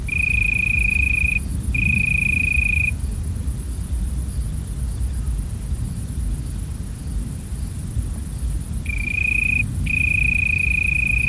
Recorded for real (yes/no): no